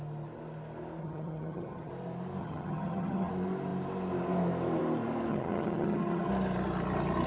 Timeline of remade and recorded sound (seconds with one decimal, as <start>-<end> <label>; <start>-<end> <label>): 0.0-1.0 recorded; 1.0-1.9 remade; 1.9-2.4 recorded; 2.4-3.3 remade; 3.3-5.3 recorded; 5.3-6.3 remade; 6.3-7.3 recorded